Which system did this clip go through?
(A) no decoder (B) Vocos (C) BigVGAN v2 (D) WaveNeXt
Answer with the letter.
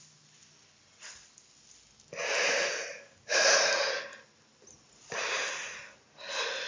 A